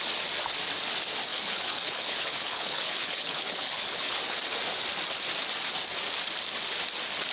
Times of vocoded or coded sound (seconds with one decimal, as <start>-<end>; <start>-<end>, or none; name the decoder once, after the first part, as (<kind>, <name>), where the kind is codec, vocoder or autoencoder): 1.3-4.2 (codec, HILCodec)